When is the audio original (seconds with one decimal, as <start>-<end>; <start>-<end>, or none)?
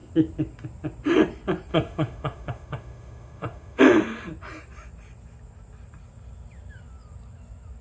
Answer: 0.0-1.7; 3.8-7.8